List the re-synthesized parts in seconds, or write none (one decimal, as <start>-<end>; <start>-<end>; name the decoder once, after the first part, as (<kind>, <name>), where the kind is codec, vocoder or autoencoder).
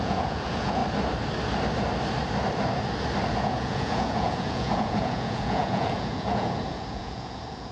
0.0-0.8 (vocoder, Vocos); 3.3-7.7